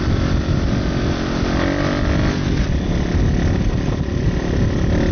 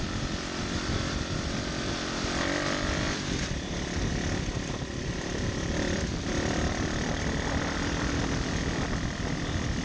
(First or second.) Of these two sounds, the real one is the first